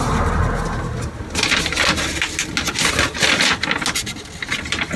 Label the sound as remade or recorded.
recorded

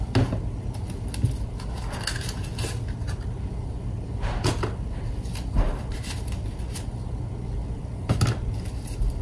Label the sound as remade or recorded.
recorded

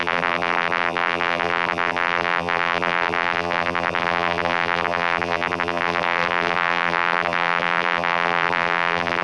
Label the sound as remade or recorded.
remade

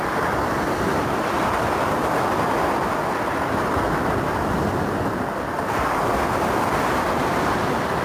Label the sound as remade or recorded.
recorded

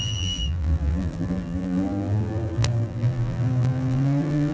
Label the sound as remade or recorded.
remade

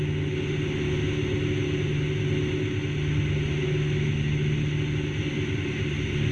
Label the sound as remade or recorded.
recorded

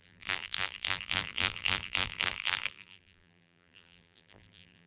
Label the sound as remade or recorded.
remade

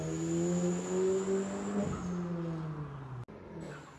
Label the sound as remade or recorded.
recorded